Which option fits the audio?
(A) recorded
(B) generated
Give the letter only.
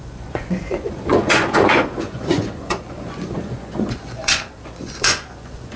B